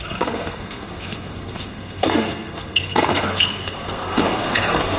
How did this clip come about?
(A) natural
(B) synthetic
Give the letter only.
B